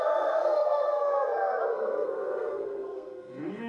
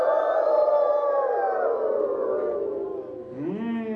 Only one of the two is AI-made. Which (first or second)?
first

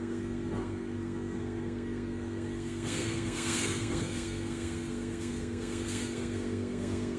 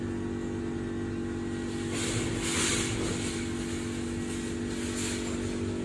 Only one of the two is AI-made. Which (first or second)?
first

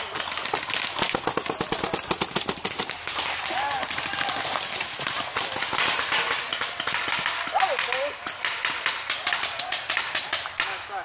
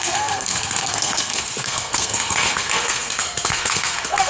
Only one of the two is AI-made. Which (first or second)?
second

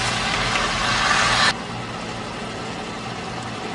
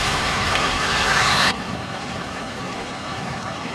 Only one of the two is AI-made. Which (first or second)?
second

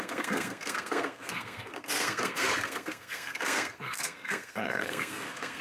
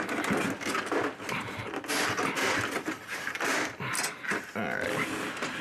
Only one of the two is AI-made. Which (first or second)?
first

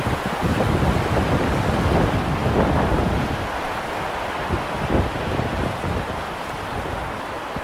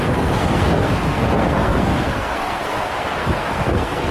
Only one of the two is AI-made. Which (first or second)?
second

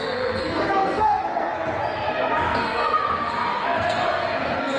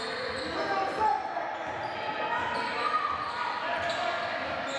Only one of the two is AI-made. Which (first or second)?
first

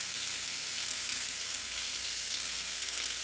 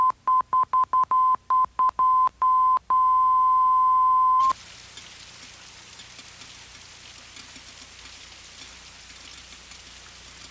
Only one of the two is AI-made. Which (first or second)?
first